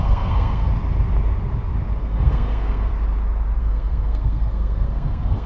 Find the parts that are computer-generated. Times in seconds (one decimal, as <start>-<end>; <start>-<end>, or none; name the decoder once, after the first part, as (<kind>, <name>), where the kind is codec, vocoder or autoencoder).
0.0-0.7 (codec, SNAC); 2.0-2.9; 3.6-5.5

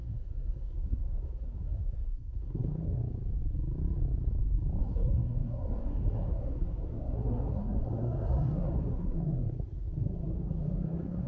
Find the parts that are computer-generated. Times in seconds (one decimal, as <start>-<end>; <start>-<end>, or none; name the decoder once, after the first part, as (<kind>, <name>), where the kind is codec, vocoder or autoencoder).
0.0-3.0 (codec, SNAC); 4.8-11.3

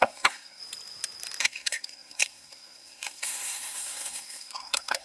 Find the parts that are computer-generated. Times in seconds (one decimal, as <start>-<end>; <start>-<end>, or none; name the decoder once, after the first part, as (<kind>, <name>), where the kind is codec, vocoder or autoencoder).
0.0-0.6 (codec, SNAC); 1.4-5.0

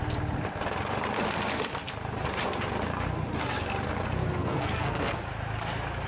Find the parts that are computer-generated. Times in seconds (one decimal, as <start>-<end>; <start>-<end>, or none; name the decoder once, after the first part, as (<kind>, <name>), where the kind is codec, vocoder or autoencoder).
4.4-5.2 (codec, SNAC)

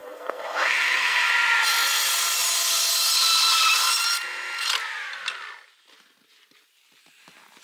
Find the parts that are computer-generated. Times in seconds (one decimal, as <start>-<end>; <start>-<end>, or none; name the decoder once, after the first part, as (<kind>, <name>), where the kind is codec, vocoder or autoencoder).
0.0-1.3 (codec, SNAC)

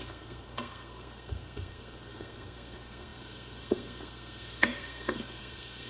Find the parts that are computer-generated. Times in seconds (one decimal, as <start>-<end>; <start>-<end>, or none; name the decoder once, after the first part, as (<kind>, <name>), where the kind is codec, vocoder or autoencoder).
0.0-5.9 (codec, SNAC)

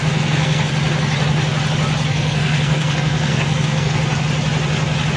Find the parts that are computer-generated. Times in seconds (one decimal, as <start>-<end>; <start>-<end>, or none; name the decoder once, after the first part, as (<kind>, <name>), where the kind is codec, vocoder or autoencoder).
0.0-0.7 (codec, SNAC); 2.1-4.0